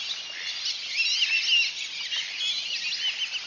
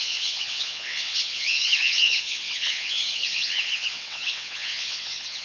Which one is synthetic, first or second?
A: second